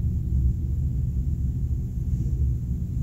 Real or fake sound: real